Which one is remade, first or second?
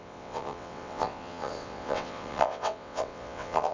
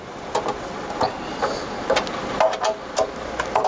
first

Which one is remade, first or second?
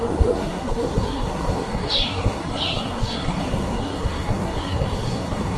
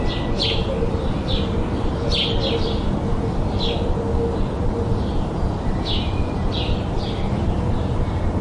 first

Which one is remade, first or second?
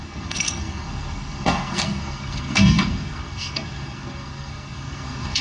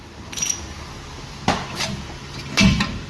first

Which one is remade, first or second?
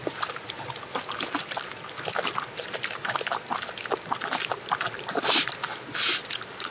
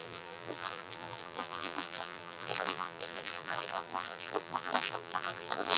second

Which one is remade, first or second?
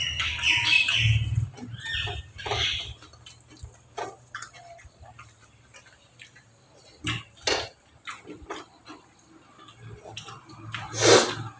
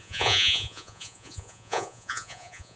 second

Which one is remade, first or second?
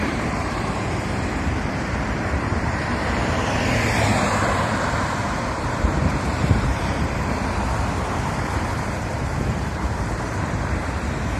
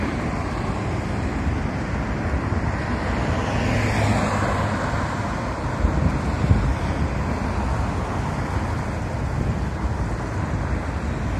first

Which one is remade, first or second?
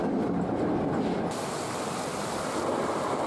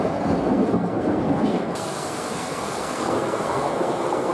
second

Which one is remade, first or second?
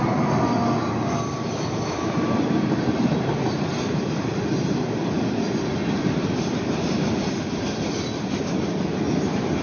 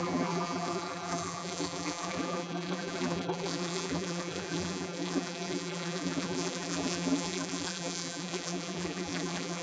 second